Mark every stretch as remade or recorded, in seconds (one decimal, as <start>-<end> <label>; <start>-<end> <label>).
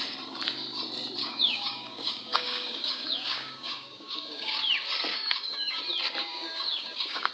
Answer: 0.0-1.2 recorded; 1.2-4.6 remade; 4.6-5.1 recorded; 5.1-5.8 remade; 5.8-6.2 recorded; 6.2-7.3 remade